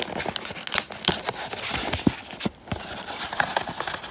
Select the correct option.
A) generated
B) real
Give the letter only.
B